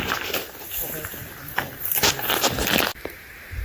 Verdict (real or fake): fake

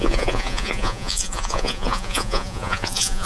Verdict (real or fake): fake